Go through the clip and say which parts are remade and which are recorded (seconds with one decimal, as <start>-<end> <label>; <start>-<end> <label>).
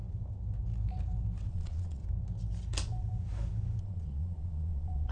0.0-1.5 recorded; 1.5-2.0 remade; 2.0-3.8 recorded; 3.8-5.1 remade